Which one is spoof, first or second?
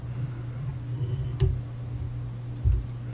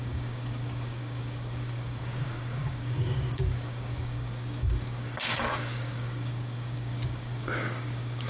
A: second